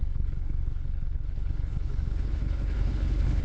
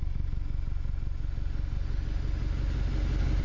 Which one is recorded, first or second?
second